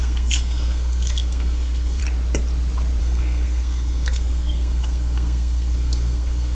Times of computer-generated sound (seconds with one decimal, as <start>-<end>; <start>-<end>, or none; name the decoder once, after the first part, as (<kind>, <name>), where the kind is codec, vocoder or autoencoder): 0.0-2.0 (codec, SNAC); 3.0-6.5